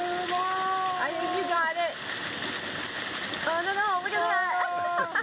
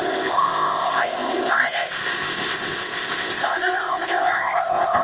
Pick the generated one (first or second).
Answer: second